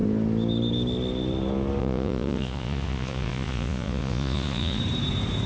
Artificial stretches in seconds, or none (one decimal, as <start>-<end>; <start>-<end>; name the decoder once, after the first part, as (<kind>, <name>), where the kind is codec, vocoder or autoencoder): 1.8-4.8 (vocoder, Vocos)